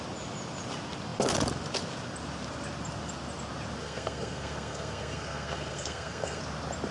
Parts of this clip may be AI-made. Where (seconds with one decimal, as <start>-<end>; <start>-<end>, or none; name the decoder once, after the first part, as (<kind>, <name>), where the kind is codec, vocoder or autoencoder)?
3.8-6.4 (codec, SNAC)